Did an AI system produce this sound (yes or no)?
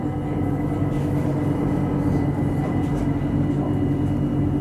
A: no